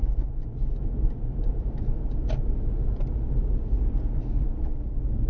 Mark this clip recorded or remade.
recorded